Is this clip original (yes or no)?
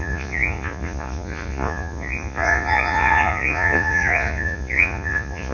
no